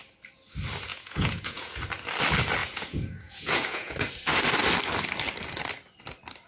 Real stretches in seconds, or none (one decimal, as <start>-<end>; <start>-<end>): 0.0-0.9; 1.8-2.6; 3.9-6.5